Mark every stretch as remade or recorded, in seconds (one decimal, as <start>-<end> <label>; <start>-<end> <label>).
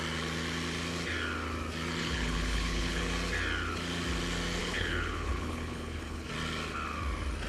0.0-2.0 recorded; 2.0-3.0 remade; 3.0-4.6 recorded; 4.6-6.3 remade; 6.3-7.5 recorded